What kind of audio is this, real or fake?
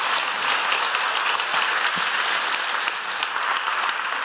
real